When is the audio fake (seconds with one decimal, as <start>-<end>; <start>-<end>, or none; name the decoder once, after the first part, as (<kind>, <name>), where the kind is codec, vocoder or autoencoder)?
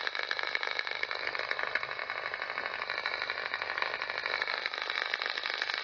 none